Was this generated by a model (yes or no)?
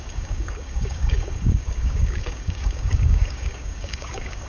yes